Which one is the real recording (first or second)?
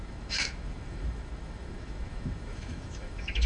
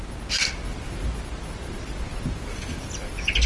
second